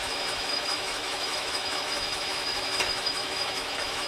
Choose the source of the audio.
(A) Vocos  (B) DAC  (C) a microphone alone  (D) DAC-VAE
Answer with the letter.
D